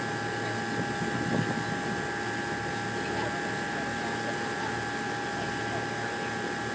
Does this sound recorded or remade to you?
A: recorded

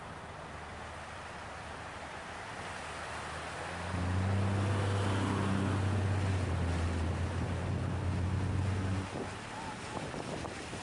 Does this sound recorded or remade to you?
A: recorded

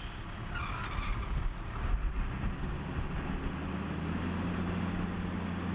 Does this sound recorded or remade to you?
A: recorded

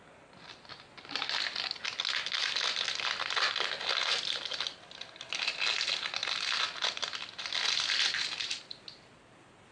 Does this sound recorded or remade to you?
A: recorded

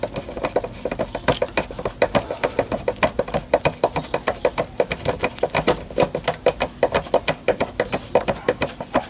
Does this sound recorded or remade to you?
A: recorded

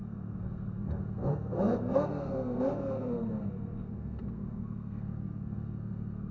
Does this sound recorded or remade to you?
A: remade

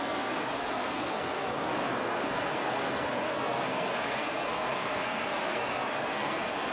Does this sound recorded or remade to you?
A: remade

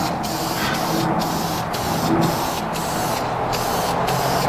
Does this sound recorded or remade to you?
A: recorded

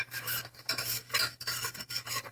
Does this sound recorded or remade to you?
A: remade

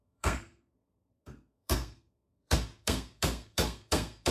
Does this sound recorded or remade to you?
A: remade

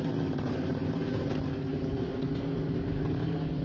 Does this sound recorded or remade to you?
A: recorded